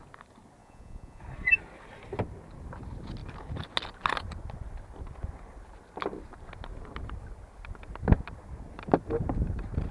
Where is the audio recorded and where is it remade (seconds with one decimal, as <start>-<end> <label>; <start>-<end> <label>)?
0.0-0.6 recorded; 0.6-1.2 remade; 1.2-9.9 recorded